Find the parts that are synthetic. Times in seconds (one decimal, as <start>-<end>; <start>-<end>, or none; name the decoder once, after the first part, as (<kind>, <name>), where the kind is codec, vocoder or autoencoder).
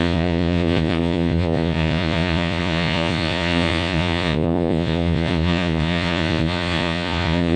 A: 0.0-7.6 (vocoder, Vocos)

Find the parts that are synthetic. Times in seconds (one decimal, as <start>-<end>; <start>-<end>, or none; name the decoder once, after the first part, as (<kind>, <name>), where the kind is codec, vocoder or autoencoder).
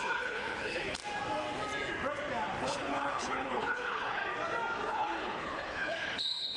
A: 0.0-1.0 (codec, HILCodec); 2.6-4.2; 4.9-6.6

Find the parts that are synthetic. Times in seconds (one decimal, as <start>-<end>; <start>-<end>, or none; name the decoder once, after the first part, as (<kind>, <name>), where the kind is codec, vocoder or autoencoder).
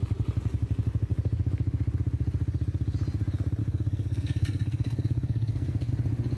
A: 3.6-5.9 (codec, SNAC)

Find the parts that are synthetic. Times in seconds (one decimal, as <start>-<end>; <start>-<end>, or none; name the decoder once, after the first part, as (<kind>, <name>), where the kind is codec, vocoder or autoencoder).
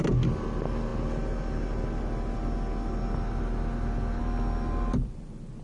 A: none